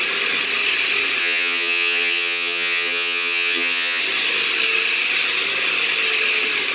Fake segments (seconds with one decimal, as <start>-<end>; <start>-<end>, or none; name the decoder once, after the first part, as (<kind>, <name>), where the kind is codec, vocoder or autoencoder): 1.2-4.0 (vocoder, HiFi-GAN)